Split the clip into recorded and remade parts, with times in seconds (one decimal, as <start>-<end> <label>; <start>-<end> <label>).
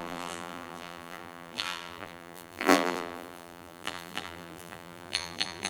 0.0-5.7 remade